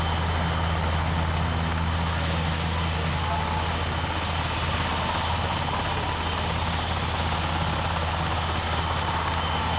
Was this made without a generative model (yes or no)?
yes